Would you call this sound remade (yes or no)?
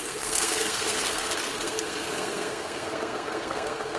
yes